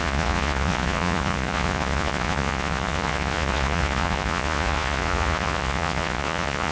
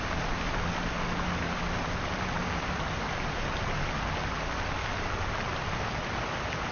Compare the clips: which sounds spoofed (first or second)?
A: first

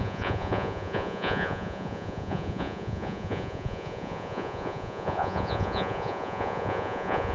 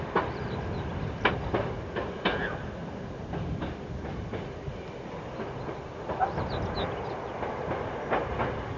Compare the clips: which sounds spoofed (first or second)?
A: first